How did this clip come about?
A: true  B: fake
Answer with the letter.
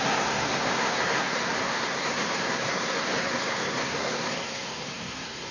B